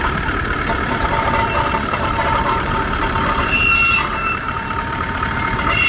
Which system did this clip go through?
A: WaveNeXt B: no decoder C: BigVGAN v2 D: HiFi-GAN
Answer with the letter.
C